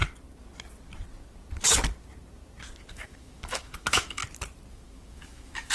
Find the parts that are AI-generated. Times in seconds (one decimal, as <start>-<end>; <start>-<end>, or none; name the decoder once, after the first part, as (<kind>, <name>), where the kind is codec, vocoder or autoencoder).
2.9-4.2 (autoencoder, DAC-VAE); 4.7-5.7